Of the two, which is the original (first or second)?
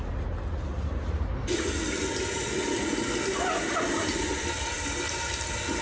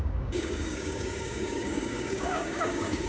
first